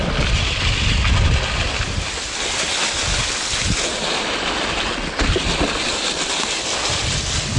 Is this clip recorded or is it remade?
recorded